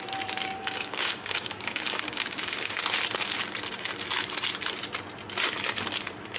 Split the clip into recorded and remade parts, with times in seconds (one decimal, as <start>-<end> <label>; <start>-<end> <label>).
0.0-0.4 recorded; 0.4-2.8 remade; 2.8-6.4 recorded